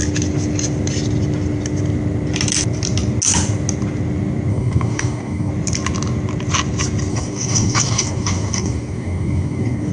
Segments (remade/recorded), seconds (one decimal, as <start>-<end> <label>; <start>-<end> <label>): 0.0-4.5 recorded; 4.5-5.5 remade; 5.5-7.1 recorded; 7.1-9.9 remade